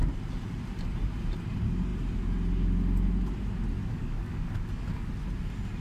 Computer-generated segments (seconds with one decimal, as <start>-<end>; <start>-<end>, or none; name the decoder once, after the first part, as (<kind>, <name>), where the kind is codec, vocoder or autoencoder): 3.8-5.1 (codec, DAC)